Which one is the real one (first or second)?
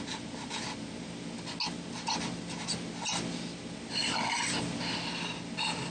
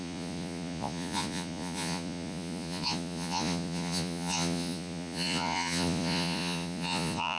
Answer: first